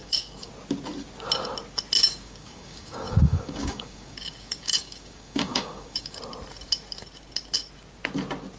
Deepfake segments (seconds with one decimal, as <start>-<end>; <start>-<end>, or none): 0.0-0.5; 2.0-6.2